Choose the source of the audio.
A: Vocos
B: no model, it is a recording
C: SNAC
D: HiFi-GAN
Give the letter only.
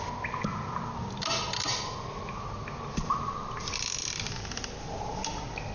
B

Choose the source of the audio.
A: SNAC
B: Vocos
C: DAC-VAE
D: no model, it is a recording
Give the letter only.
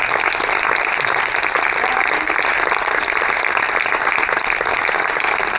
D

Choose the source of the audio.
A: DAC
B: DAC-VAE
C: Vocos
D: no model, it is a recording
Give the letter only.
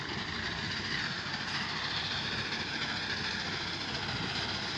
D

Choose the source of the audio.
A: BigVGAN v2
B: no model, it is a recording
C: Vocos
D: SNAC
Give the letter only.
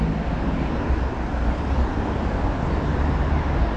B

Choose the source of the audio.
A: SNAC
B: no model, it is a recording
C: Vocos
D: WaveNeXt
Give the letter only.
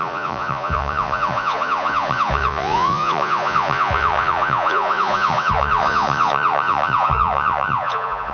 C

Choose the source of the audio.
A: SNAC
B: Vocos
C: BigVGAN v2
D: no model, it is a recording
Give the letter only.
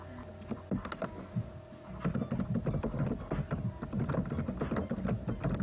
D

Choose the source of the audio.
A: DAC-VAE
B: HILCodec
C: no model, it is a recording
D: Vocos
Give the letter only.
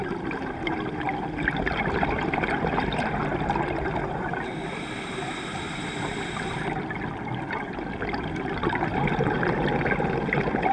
C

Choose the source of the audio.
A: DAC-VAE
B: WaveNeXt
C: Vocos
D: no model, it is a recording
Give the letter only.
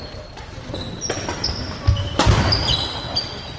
D